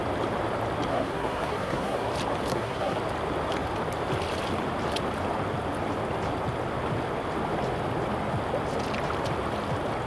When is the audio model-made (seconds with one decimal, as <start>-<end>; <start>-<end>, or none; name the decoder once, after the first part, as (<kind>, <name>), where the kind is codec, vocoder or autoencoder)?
0.9-2.1 (codec, SNAC); 2.5-3.0